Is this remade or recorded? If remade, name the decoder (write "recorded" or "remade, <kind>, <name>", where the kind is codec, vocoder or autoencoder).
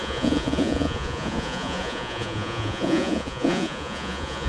remade, vocoder, Vocos